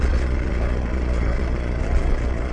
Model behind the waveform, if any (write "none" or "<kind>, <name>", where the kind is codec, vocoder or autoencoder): vocoder, Vocos